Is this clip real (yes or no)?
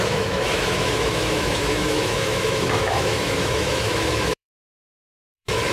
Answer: no